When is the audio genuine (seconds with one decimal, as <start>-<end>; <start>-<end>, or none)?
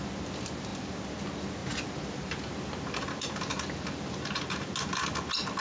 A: 0.0-5.6